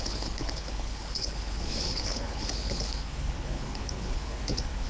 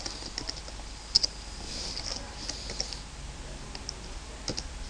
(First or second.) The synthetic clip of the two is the first